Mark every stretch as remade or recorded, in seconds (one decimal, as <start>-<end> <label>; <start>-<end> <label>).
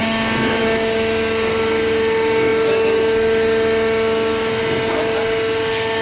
0.0-6.0 recorded